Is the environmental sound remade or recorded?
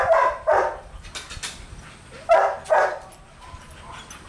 recorded